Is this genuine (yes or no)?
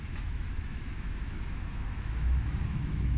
no